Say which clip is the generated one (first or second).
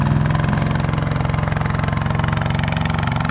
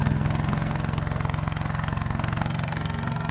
second